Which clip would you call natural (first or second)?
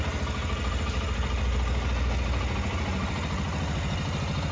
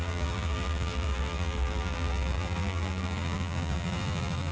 first